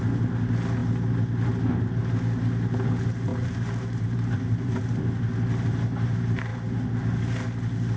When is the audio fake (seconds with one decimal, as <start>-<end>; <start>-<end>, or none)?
3.3-4.8